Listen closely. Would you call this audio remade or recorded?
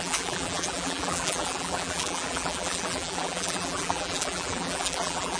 remade